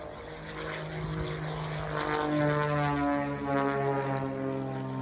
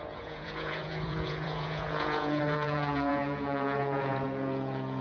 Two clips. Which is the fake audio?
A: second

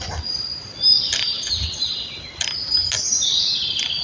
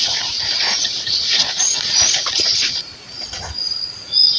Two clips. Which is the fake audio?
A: second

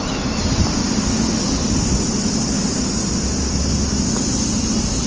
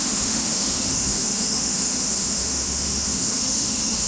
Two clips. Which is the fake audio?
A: second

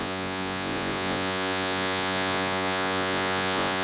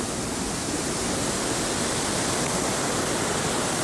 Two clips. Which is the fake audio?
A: first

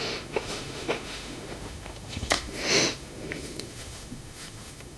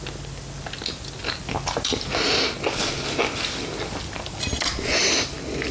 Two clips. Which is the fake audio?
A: first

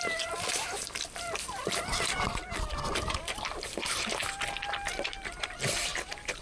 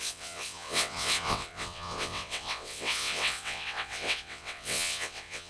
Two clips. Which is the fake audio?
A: second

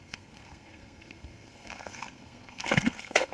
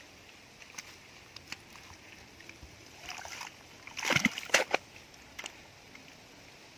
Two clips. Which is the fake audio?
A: first